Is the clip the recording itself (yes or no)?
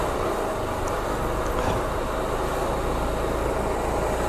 yes